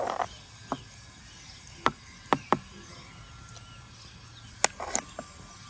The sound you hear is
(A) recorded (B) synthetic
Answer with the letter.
A